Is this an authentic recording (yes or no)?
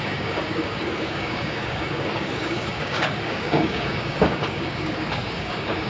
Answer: no